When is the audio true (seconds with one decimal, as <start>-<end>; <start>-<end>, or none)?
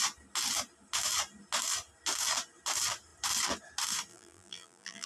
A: 0.0-4.1